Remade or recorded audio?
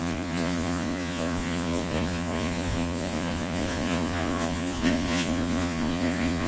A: remade